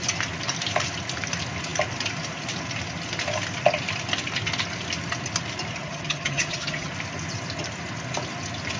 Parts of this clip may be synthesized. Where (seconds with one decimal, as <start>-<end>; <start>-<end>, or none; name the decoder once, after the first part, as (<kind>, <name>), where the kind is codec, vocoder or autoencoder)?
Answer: 5.8-6.9 (vocoder, HiFi-GAN)